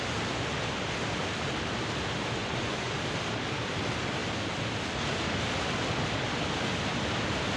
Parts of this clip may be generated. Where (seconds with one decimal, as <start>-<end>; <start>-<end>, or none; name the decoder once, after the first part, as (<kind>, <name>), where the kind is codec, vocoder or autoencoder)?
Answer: 2.4-3.0 (vocoder, Vocos)